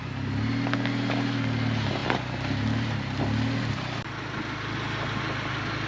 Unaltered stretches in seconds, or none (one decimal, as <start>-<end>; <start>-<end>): 0.0-5.9